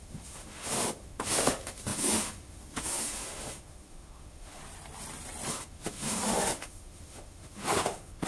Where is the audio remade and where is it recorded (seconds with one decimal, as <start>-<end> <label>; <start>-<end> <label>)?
0.0-4.6 remade; 4.6-5.5 recorded; 5.5-8.3 remade